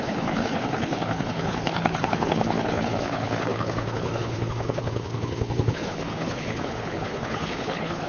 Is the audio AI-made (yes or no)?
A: yes